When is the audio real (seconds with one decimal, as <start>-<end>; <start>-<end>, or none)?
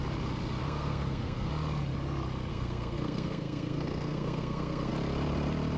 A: 0.0-0.6; 1.5-2.5; 4.9-5.8